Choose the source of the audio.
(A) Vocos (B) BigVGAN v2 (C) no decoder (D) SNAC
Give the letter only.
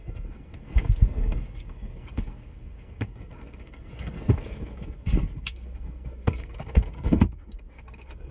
D